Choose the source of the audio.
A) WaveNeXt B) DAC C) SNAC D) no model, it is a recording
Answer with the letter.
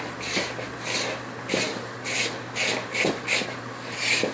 D